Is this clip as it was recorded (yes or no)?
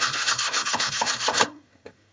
no